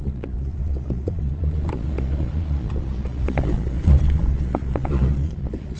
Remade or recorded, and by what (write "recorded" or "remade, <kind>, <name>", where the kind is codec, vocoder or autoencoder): remade, vocoder, Vocos